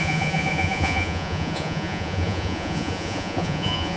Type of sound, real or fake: fake